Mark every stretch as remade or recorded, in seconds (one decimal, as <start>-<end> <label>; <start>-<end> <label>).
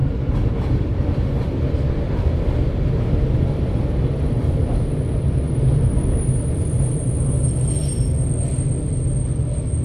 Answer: 0.0-9.8 recorded